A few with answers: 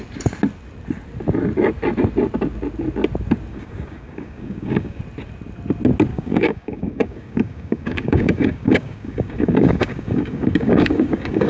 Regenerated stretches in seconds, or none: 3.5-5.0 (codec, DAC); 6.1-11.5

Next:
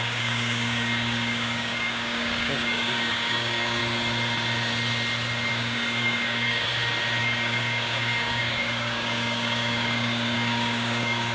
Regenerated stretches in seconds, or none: 0.0-3.8 (codec, DAC); 5.5-6.7; 7.2-11.3

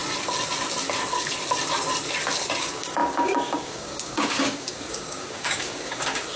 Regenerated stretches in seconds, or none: 2.6-6.4 (codec, DAC)

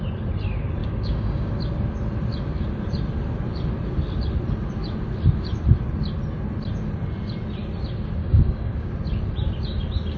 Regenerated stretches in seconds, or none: 0.8-1.5 (codec, DAC); 8.2-8.9

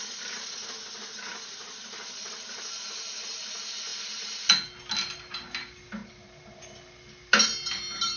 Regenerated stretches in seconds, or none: none

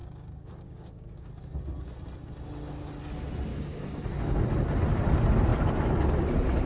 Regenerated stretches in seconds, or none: 0.0-1.3 (codec, DAC); 3.5-4.1